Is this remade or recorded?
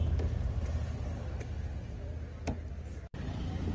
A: recorded